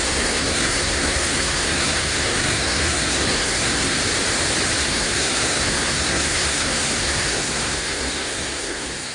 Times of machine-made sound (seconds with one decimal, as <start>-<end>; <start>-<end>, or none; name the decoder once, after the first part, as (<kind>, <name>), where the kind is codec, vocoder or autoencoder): 0.0-4.0 (codec, SNAC); 4.8-9.1

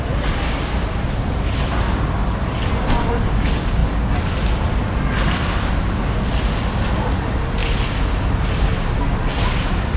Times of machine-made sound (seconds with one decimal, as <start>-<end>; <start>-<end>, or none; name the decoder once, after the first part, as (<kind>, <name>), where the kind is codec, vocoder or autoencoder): none

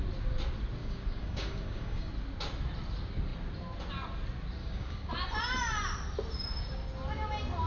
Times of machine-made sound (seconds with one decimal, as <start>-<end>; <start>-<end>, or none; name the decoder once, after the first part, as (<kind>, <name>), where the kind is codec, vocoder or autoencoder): 0.8-2.1 (codec, DAC); 4.6-5.1

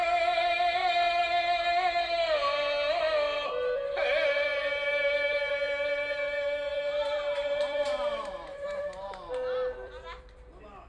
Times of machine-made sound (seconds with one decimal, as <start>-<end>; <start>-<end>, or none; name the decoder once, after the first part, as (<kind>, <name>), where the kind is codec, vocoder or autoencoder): 6.7-10.2 (vocoder, BigVGAN v2)

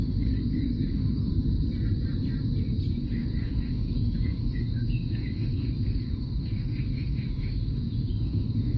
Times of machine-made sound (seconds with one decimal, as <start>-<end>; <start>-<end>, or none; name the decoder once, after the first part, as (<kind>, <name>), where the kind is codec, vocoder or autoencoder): 0.0-1.3 (autoencoder, DAC-VAE); 2.9-8.8

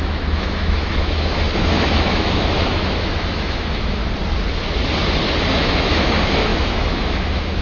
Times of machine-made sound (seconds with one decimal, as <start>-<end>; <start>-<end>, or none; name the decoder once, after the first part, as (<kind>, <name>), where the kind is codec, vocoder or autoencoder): 0.0-4.0 (autoencoder, DAC-VAE); 5.5-7.6

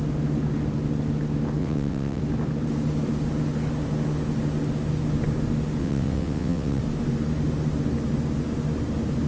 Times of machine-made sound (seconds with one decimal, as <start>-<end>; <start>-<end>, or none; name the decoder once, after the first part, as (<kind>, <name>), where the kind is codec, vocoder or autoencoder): 1.6-2.2 (vocoder, WaveNeXt); 5.8-6.8